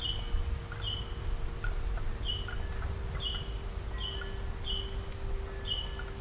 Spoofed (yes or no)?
no